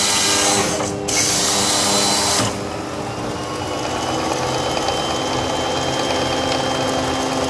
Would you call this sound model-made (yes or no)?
no